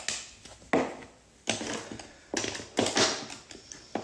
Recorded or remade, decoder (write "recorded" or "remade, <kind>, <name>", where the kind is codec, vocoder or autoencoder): recorded